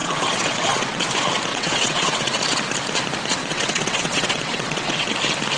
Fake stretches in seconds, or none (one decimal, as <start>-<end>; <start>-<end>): 0.0-1.1; 1.5-2.4; 3.4-5.1